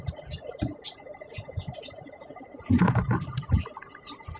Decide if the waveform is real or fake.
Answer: real